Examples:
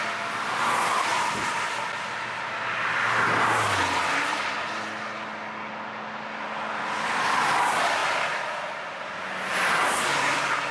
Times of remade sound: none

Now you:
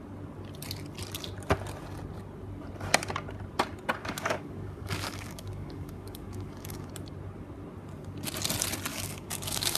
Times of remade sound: 4.0-6.9 (codec, DAC); 8.9-9.8

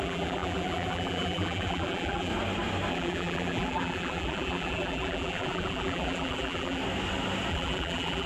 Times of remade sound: 0.0-2.3 (vocoder, BigVGAN v2); 2.9-6.8; 7.5-8.3

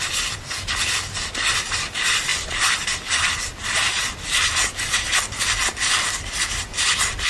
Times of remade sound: none

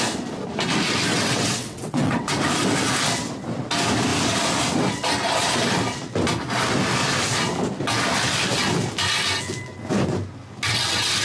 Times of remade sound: 1.1-2.3 (vocoder, WaveNeXt)

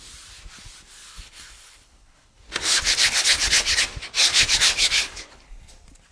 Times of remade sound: 1.1-3.8 (codec, HILCodec); 4.3-5.5

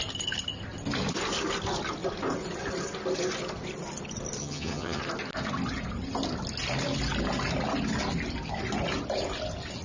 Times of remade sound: 4.4-5.0 (vocoder, HiFi-GAN)